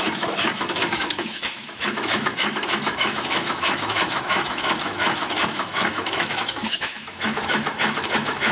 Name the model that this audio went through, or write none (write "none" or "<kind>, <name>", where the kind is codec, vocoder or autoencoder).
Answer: autoencoder, DAC-VAE